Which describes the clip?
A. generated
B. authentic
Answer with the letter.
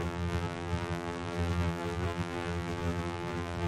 A